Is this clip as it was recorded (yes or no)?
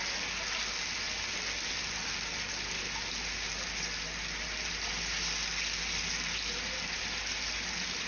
yes